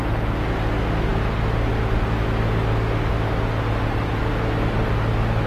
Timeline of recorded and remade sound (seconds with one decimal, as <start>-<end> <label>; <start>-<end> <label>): 0.0-5.5 recorded